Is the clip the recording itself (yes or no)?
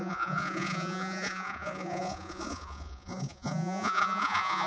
no